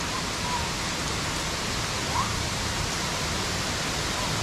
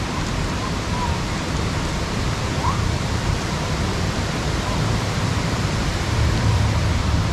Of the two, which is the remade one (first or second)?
second